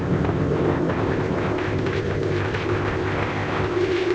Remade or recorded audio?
remade